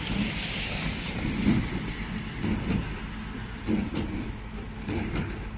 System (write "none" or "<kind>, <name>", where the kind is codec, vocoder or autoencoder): none